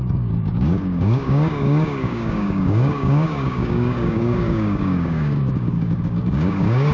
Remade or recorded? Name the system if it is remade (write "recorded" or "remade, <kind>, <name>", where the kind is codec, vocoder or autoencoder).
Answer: remade, codec, DAC